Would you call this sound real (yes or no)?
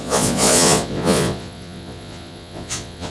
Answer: no